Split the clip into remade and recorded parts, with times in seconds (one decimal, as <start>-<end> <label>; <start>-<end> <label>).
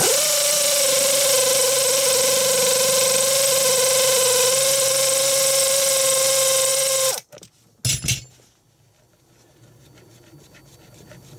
0.0-6.7 recorded; 6.7-7.4 remade; 7.4-11.4 recorded